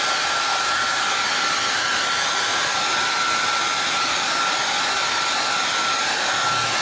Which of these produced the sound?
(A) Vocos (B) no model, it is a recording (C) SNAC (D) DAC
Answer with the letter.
B